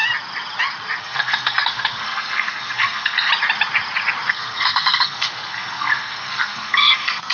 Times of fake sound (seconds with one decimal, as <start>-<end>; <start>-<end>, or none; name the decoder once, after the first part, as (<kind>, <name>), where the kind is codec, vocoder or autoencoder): 1.0-3.3 (codec, SNAC); 4.3-7.3